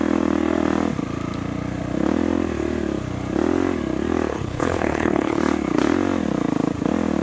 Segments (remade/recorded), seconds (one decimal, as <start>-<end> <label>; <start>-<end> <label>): 0.0-4.3 recorded; 4.3-5.4 remade; 5.4-7.2 recorded